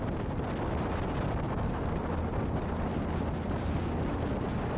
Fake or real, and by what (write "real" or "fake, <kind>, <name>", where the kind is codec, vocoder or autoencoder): real